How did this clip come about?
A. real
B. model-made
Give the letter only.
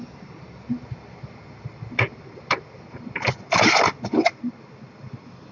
A